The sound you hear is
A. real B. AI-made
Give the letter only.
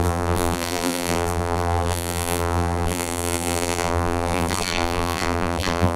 B